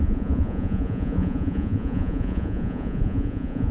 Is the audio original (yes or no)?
no